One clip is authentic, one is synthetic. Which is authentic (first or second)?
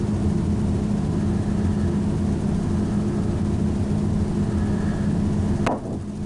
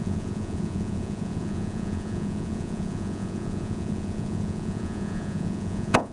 first